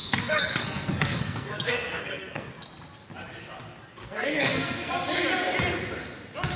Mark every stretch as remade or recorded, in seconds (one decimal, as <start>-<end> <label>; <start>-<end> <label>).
0.0-2.5 remade; 2.5-3.9 recorded; 3.9-4.9 remade; 4.9-6.6 recorded